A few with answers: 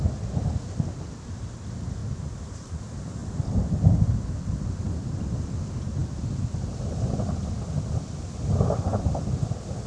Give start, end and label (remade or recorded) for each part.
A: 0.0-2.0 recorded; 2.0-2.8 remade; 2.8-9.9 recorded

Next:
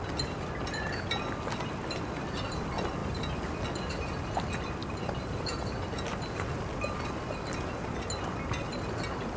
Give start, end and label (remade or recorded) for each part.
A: 0.0-3.0 recorded; 3.0-3.9 remade; 3.9-9.4 recorded

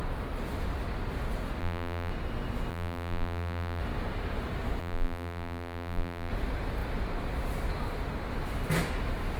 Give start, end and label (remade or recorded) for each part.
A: 0.0-1.6 recorded; 1.6-2.1 remade; 2.1-2.7 recorded; 2.7-3.8 remade; 3.8-4.8 recorded; 4.8-6.3 remade; 6.3-9.4 recorded

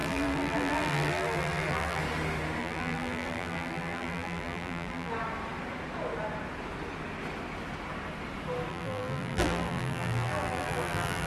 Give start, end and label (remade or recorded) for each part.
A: 0.0-2.0 remade; 2.0-2.6 recorded; 2.6-5.1 remade; 5.1-8.7 recorded; 8.7-11.3 remade

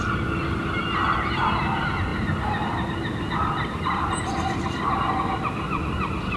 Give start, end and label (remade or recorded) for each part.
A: 0.0-6.4 recorded

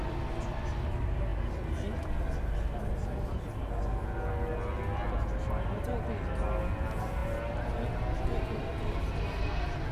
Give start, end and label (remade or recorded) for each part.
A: 0.0-9.9 recorded

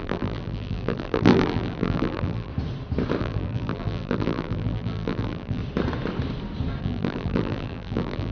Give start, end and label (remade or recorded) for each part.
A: 0.0-2.5 remade; 2.5-3.2 recorded; 3.2-5.6 remade; 5.6-6.8 recorded; 6.8-8.3 remade